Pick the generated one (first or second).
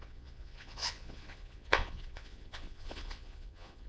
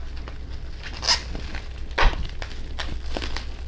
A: first